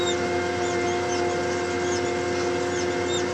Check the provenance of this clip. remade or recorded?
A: recorded